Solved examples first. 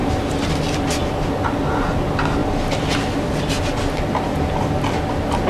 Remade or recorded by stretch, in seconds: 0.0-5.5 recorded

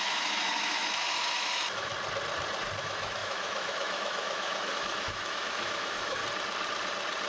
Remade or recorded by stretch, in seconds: 0.0-1.9 remade; 1.9-2.8 recorded; 2.8-6.2 remade; 6.2-7.3 recorded

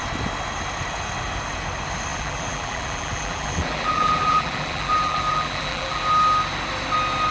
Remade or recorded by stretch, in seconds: 0.0-2.1 recorded; 2.1-6.0 remade; 6.0-7.3 recorded

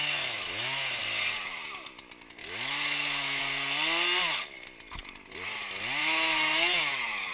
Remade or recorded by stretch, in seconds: 0.0-1.0 remade; 1.0-2.4 recorded; 2.4-3.4 remade; 3.4-6.0 recorded; 6.0-6.8 remade; 6.8-7.3 recorded

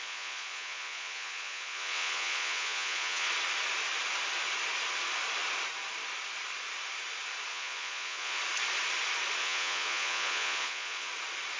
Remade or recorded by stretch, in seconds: 0.0-3.3 remade; 3.3-7.5 recorded; 7.5-8.4 remade; 8.4-9.4 recorded; 9.4-11.1 remade; 11.1-11.6 recorded

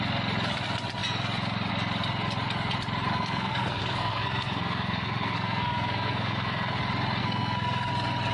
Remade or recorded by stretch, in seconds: 0.0-3.1 recorded; 3.1-6.8 remade; 6.8-7.2 recorded; 7.2-7.9 remade; 7.9-8.3 recorded

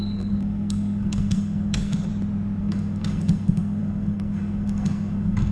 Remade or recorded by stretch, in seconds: 0.0-2.1 remade; 2.1-2.6 recorded; 2.6-5.5 remade

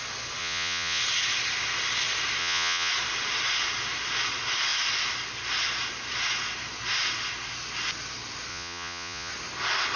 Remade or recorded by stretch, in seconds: 0.0-0.4 recorded; 0.4-1.0 remade; 1.0-2.4 recorded; 2.4-2.9 remade; 2.9-8.5 recorded; 8.5-9.3 remade; 9.3-10.0 recorded